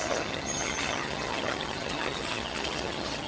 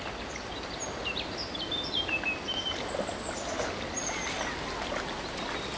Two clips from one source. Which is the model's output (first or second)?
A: first